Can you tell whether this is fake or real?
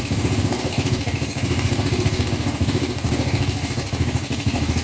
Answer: fake